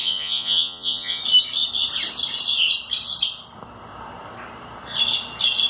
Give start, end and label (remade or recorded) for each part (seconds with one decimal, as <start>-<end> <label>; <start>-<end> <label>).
0.0-1.2 remade; 1.2-5.7 recorded